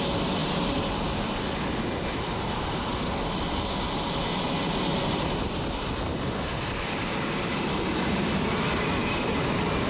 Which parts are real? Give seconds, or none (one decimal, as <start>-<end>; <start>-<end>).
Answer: 0.0-0.4; 1.0-4.9; 5.5-9.9